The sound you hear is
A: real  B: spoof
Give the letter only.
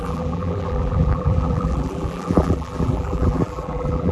B